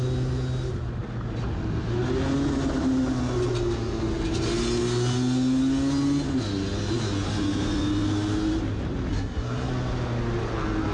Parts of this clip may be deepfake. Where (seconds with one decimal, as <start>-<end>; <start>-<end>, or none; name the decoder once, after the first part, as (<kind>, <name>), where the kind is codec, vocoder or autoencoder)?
9.1-9.7 (codec, SNAC)